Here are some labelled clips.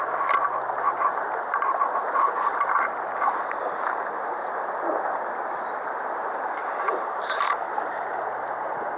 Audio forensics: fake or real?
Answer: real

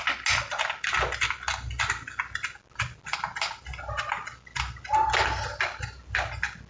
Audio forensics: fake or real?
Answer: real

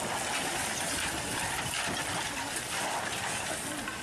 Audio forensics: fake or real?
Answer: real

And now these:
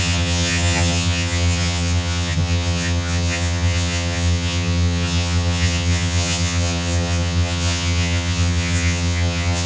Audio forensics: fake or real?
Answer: fake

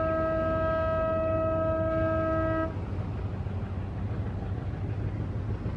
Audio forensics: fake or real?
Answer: real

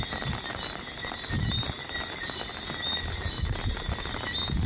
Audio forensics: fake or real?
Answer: real